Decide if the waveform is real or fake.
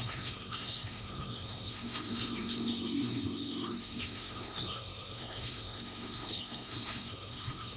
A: fake